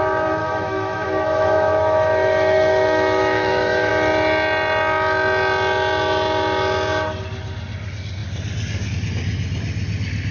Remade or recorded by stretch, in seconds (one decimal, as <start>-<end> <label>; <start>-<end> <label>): 0.0-0.4 recorded; 0.4-3.9 remade; 3.9-10.3 recorded